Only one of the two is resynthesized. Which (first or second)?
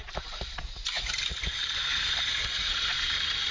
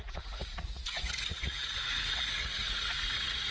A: second